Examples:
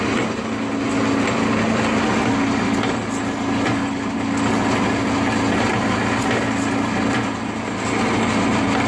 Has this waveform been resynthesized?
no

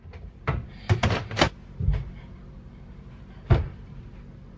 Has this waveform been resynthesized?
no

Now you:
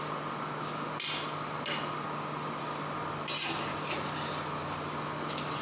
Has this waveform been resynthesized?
no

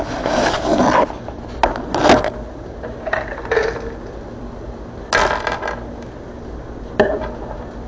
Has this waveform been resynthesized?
no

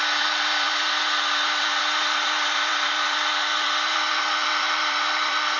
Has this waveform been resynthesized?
yes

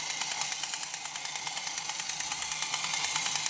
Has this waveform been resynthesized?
no